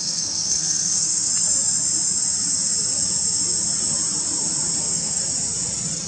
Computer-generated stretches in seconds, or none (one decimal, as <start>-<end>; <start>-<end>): 0.0-1.3; 4.8-5.2

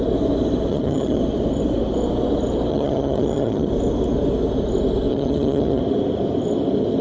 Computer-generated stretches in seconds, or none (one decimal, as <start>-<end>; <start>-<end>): 0.7-1.2; 2.7-3.7; 5.1-5.8

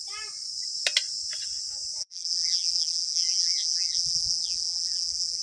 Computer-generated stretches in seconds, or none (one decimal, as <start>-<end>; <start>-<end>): 2.0-5.4

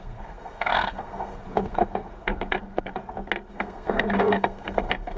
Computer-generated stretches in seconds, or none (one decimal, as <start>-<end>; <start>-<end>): 0.0-3.0; 3.5-5.2

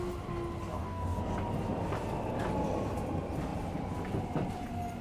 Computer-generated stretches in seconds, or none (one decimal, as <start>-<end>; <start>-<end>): 0.7-1.2

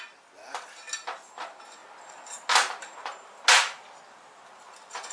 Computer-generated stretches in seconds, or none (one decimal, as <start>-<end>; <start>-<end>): none

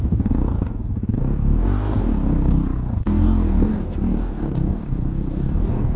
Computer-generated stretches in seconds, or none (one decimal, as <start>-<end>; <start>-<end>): 0.0-6.0

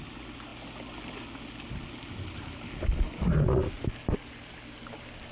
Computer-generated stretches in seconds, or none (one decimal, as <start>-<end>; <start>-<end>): none